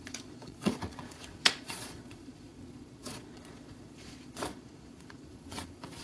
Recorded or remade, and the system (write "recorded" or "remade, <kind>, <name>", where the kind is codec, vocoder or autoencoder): remade, vocoder, Vocos